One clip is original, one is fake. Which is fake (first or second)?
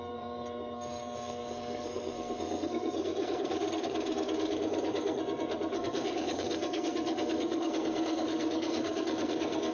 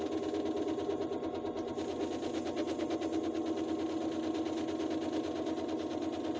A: first